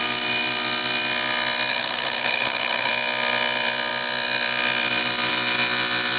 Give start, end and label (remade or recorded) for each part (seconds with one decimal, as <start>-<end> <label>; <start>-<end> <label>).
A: 0.0-1.7 recorded; 1.7-2.9 remade; 2.9-6.2 recorded